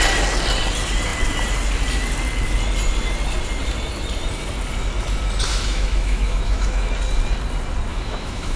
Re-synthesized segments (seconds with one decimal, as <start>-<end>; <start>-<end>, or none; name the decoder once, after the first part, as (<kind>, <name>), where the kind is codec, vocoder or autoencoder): 5.5-6.9 (autoencoder, DAC-VAE); 7.9-8.6